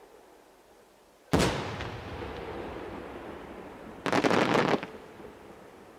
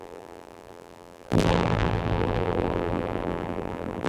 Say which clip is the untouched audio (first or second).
first